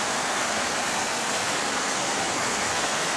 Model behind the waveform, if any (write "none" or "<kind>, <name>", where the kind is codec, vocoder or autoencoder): codec, SNAC